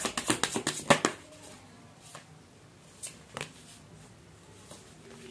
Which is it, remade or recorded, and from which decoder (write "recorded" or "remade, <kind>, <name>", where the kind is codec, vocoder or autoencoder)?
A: recorded